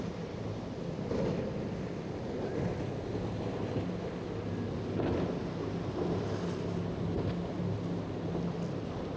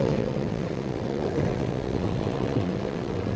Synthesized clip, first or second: second